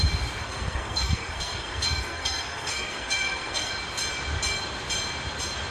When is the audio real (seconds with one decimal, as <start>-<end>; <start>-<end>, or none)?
0.0-0.4; 3.7-5.7